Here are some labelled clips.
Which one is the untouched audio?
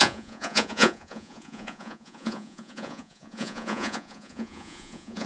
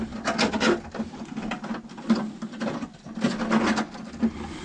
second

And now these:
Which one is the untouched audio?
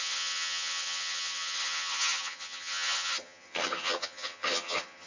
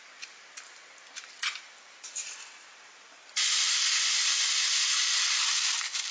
second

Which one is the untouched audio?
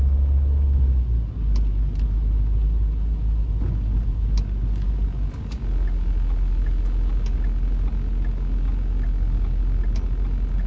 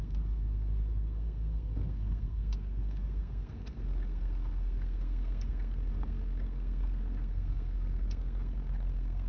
first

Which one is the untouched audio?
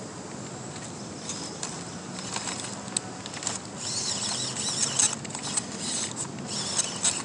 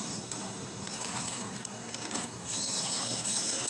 first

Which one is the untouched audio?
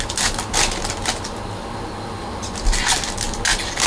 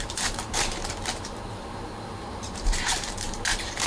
first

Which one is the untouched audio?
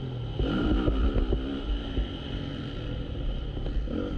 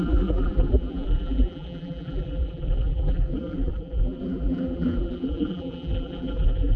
first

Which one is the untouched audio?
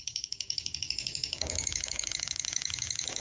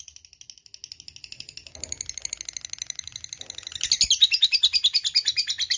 second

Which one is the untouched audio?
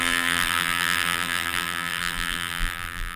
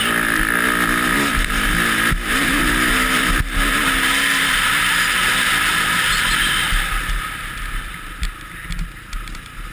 second